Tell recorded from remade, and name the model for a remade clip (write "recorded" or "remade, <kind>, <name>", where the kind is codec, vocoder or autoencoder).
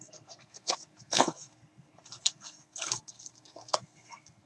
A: remade, codec, SNAC